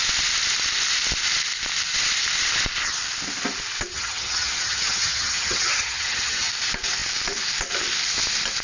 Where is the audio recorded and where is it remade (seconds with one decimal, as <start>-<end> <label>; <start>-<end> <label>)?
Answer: 0.0-3.9 recorded; 3.9-6.5 remade; 6.5-8.6 recorded